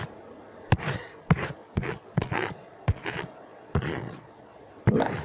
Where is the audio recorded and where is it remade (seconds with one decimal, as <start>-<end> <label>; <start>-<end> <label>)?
0.0-1.6 recorded; 1.6-4.7 remade; 4.7-5.2 recorded